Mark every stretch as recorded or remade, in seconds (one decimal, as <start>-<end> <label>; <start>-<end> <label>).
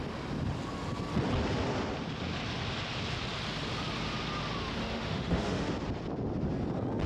0.0-4.8 recorded; 4.8-5.7 remade; 5.7-7.1 recorded